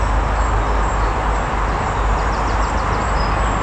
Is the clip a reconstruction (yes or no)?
no